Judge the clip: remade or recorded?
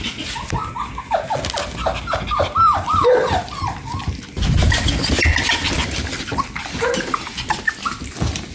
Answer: recorded